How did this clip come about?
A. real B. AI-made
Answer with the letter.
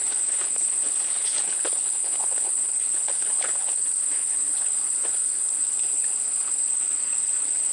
B